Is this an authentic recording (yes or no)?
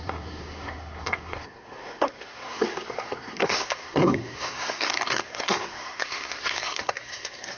no